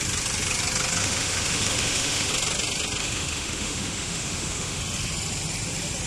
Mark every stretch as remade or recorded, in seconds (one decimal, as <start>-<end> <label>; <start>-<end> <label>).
0.0-1.0 recorded; 1.0-2.3 remade; 2.3-3.0 recorded; 3.0-4.8 remade; 4.8-6.1 recorded